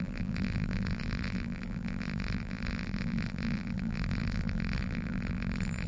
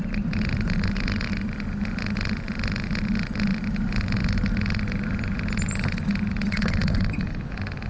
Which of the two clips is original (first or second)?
second